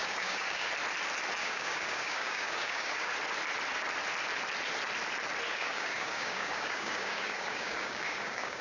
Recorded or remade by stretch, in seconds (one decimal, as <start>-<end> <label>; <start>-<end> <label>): 0.0-0.7 remade; 0.7-1.4 recorded; 1.4-3.1 remade; 3.1-5.5 recorded; 5.5-8.6 remade